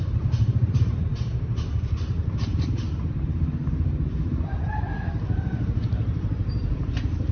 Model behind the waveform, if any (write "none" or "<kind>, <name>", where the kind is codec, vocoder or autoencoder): vocoder, BigVGAN v2